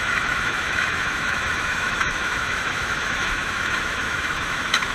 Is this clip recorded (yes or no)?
no